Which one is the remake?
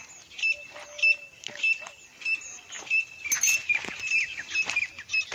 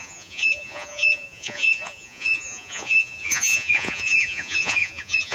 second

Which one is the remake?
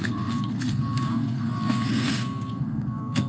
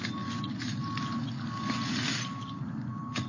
first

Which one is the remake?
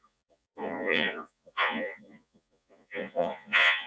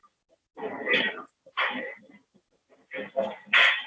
first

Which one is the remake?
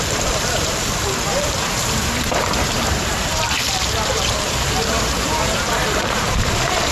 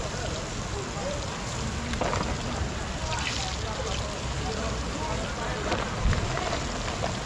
first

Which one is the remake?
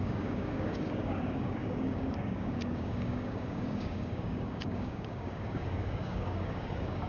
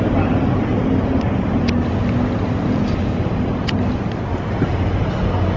first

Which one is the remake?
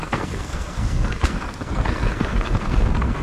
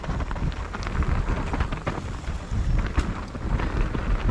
first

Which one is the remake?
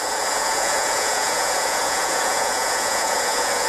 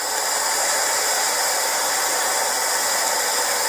first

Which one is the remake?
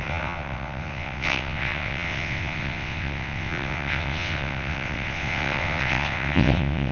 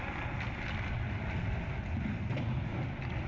first